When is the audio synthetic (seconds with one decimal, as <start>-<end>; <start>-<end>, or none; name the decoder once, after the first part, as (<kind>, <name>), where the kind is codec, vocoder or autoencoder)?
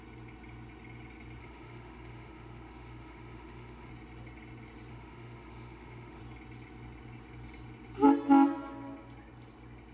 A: 1.4-3.9 (autoencoder, DAC-VAE); 4.9-6.2